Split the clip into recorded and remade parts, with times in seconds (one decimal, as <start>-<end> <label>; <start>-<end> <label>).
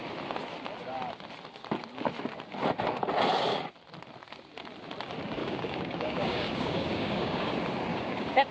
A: 0.0-5.4 recorded; 5.4-7.5 remade; 7.5-7.9 recorded; 7.9-8.5 remade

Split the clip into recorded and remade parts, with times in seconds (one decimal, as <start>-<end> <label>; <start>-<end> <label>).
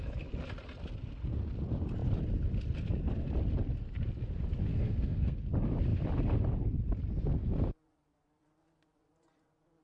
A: 0.0-4.7 recorded; 4.7-5.4 remade; 5.4-9.8 recorded